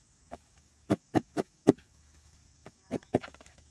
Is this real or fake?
fake